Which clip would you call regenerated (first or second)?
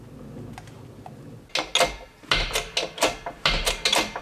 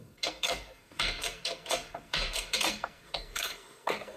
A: second